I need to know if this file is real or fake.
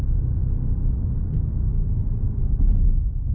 real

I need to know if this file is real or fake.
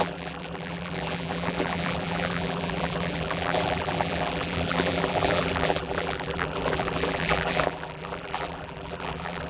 fake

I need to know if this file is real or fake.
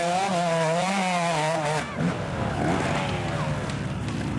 fake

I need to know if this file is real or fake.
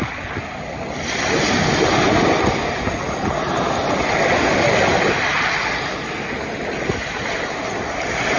real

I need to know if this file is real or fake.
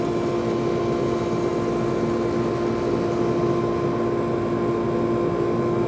real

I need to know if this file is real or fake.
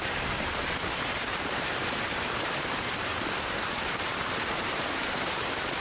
fake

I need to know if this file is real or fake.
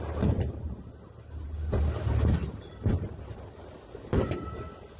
real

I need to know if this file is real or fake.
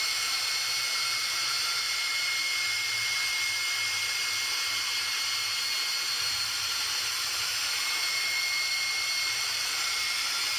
fake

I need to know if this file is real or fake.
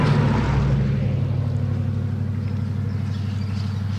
real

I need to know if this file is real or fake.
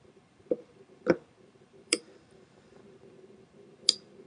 fake